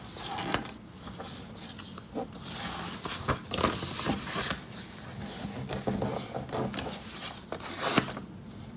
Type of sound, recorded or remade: recorded